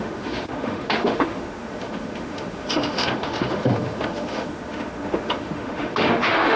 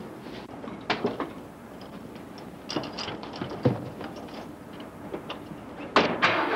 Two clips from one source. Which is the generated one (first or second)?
first